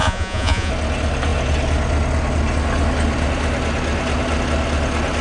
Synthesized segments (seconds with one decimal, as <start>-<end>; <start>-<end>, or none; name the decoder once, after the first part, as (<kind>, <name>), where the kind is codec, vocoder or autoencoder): 0.0-0.7 (vocoder, Vocos)

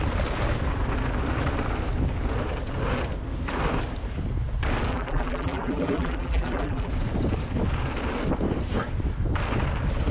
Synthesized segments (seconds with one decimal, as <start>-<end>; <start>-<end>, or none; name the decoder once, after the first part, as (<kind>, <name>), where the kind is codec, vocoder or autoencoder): 4.9-6.9 (vocoder, BigVGAN v2)